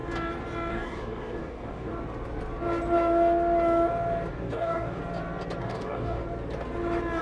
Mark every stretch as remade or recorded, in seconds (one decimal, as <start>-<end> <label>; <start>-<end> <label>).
0.0-0.7 recorded; 0.7-1.9 remade; 1.9-4.3 recorded; 4.3-5.0 remade; 5.0-5.6 recorded; 5.6-6.2 remade; 6.2-7.2 recorded